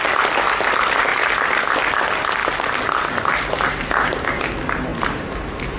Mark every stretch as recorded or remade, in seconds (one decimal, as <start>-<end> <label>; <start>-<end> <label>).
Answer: 0.0-5.8 recorded